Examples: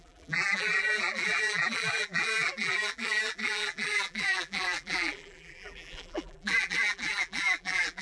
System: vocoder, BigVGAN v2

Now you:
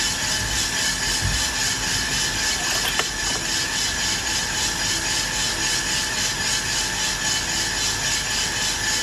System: none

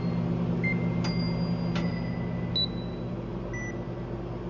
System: none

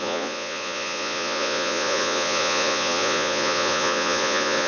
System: vocoder, Vocos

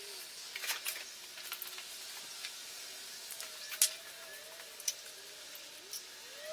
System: none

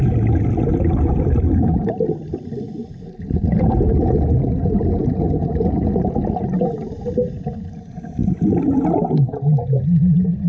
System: none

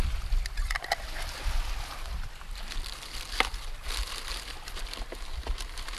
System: none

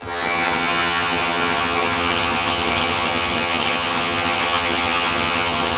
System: vocoder, HiFi-GAN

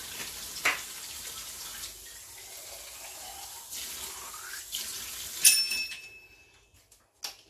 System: none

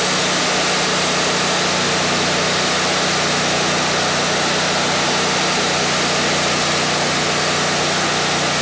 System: none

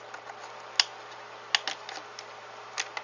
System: none